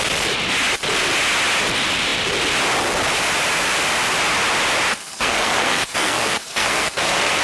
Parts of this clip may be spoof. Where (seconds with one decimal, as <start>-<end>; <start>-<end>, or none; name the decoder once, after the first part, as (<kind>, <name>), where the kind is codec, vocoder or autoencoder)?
4.9-7.4 (codec, SNAC)

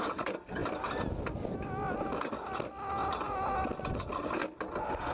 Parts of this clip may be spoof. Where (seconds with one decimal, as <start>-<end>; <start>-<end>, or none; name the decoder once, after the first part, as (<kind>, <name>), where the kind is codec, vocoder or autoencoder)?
none

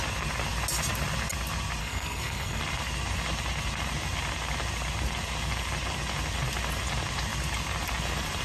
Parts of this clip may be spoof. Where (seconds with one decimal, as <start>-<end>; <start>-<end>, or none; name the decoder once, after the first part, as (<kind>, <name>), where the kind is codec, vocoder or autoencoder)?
1.8-2.6 (codec, SNAC)

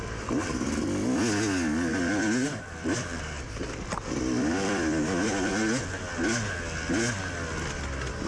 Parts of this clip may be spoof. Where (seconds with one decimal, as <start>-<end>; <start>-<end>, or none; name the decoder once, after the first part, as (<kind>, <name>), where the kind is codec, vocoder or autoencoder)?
1.9-5.5 (vocoder, BigVGAN v2)

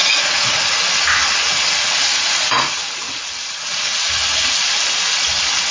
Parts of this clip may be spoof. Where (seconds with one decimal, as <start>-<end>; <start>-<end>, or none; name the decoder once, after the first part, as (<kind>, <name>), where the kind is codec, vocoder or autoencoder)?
0.0-0.6 (vocoder, Vocos); 2.1-2.6

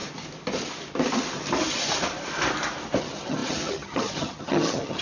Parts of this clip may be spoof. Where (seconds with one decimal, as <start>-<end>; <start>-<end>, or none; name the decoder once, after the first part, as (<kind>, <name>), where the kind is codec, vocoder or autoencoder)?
3.0-5.0 (vocoder, HiFi-GAN)

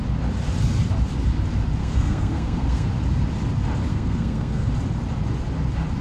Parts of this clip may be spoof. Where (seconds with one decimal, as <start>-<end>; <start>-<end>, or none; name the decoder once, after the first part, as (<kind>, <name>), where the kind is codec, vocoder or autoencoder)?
1.8-2.9 (codec, SNAC); 3.9-4.7

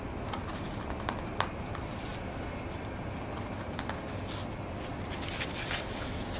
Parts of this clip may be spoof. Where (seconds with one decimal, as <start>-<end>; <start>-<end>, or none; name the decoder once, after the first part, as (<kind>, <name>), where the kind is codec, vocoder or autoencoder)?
none